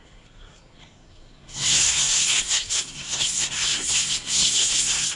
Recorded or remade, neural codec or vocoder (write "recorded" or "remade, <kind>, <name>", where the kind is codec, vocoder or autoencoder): remade, codec, SNAC